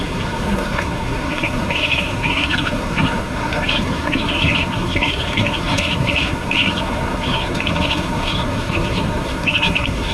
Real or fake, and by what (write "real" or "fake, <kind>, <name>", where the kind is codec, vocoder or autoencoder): fake, codec, SNAC